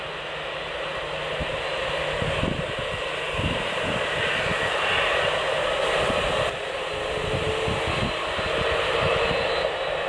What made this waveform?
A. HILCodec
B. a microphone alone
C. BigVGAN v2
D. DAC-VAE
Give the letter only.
B